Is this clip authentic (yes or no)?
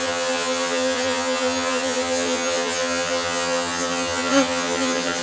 no